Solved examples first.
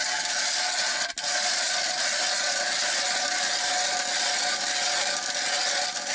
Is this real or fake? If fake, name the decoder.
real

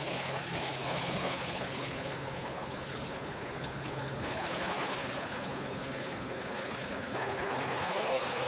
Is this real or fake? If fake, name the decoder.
fake, codec, HILCodec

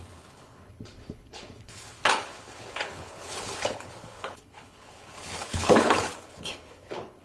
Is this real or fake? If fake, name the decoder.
fake, codec, HILCodec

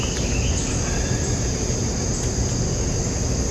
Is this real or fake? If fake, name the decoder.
real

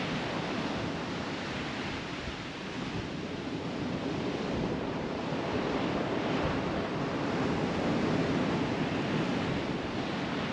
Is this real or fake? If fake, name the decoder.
real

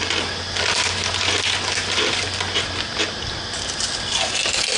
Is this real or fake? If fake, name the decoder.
real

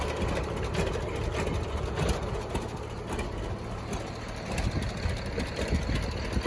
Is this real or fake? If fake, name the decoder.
real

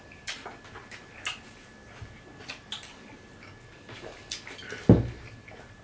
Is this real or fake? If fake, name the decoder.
real